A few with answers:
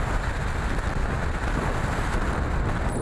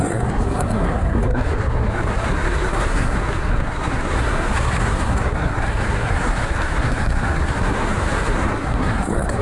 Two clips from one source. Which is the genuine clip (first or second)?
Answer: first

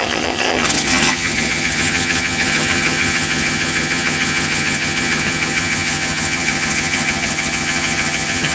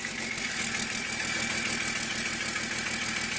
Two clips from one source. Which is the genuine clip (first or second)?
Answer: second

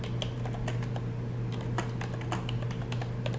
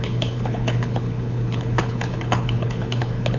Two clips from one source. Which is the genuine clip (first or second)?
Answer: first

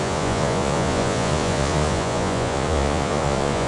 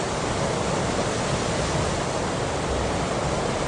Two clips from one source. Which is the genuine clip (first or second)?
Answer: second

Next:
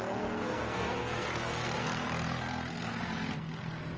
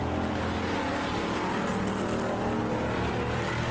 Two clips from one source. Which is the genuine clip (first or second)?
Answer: second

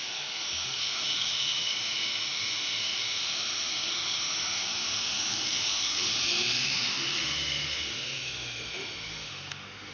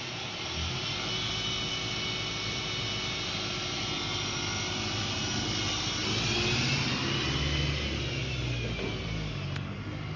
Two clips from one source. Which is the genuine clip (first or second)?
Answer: second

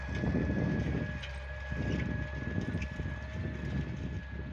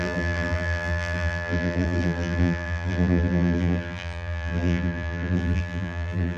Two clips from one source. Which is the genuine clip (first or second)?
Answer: first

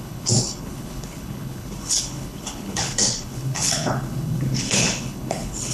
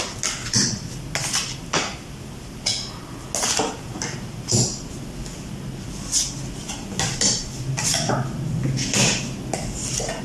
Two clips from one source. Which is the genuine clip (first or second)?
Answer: second